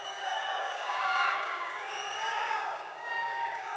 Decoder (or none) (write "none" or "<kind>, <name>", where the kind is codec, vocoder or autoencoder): codec, DAC